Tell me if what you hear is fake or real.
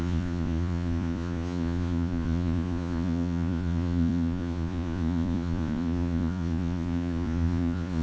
fake